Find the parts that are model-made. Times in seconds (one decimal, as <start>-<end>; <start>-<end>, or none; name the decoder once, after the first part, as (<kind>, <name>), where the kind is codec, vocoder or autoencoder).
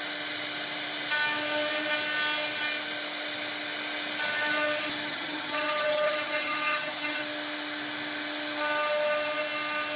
5.1-7.2 (vocoder, HiFi-GAN)